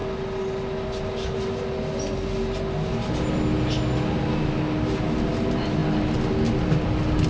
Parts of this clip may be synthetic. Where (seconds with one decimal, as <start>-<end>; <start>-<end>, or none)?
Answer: none